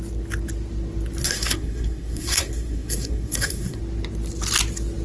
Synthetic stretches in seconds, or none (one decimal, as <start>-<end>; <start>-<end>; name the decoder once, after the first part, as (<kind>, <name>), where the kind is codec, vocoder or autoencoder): 1.2-3.8 (codec, SNAC)